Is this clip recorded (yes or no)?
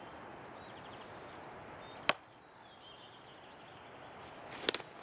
yes